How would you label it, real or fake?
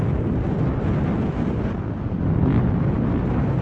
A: real